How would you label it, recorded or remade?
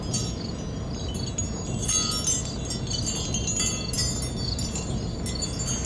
recorded